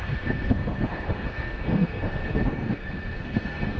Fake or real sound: fake